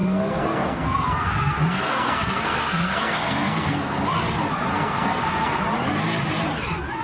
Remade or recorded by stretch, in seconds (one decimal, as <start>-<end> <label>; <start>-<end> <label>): 0.0-4.2 remade; 4.2-4.7 recorded; 4.7-5.6 remade; 5.6-7.0 recorded